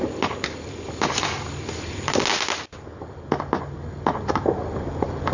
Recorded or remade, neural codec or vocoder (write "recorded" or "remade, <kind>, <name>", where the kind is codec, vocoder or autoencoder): recorded